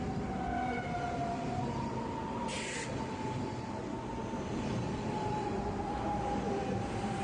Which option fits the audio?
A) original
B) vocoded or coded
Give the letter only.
A